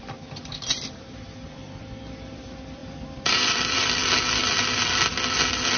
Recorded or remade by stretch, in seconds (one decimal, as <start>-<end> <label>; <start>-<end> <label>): 0.0-1.6 remade; 1.6-2.3 recorded; 2.3-4.0 remade; 4.0-5.8 recorded